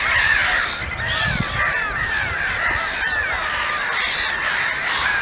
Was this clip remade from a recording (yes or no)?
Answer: no